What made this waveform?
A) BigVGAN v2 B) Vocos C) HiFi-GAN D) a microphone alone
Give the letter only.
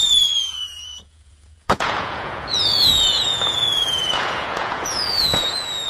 B